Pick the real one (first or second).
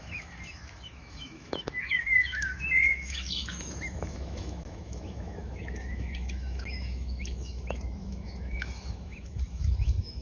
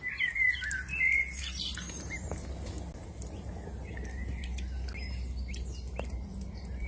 second